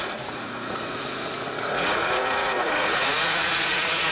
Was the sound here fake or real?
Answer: fake